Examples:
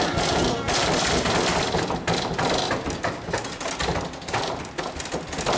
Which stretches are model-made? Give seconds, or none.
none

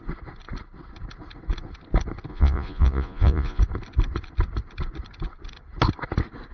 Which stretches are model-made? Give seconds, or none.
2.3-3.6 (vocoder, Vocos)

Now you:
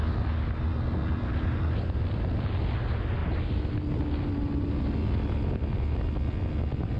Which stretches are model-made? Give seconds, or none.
none

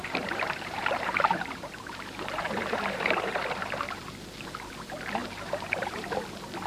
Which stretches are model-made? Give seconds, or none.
0.0-4.0 (vocoder, BigVGAN v2); 5.2-6.1

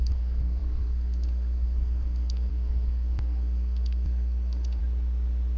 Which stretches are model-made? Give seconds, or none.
0.0-4.8 (codec, SNAC)

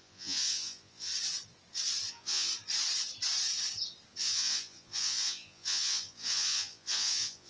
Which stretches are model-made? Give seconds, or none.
0.0-1.1 (vocoder, Vocos); 2.1-2.5; 4.2-7.5

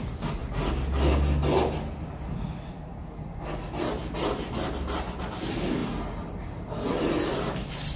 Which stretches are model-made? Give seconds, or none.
none

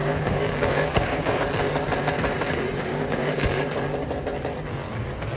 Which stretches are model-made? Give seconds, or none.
0.0-1.4 (codec, DAC); 2.9-3.6